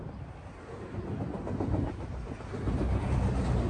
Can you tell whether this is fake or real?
real